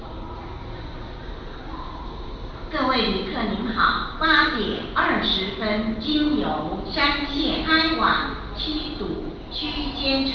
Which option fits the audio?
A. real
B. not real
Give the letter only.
A